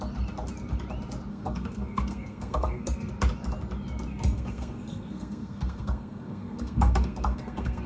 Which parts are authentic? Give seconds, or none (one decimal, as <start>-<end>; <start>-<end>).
0.0-1.3; 3.1-4.1